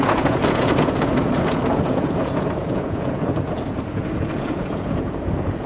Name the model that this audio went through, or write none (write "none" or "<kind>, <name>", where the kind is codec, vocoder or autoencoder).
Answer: vocoder, Vocos